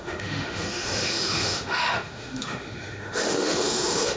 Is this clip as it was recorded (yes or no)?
no